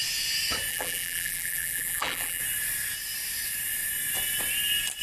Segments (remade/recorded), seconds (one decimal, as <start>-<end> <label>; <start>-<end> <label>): 0.0-0.7 recorded; 0.7-2.4 remade; 2.4-5.0 recorded